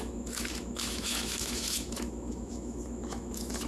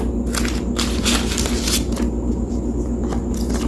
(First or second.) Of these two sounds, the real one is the second